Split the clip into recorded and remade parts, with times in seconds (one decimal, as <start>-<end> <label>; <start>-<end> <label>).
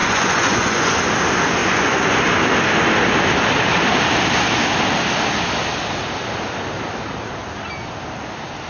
0.0-1.0 remade; 1.0-1.6 recorded; 1.6-2.2 remade; 2.2-8.7 recorded